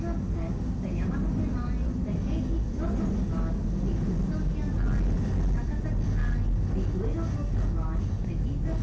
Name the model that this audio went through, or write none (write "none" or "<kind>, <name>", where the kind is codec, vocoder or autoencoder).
none